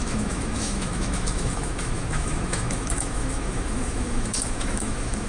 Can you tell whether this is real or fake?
fake